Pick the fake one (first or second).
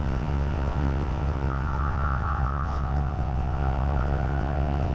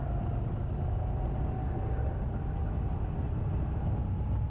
first